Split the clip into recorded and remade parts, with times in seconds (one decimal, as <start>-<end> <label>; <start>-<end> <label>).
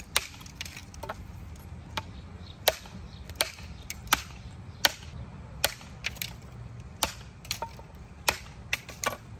0.0-9.4 remade